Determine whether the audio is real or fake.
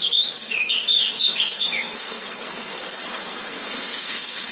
fake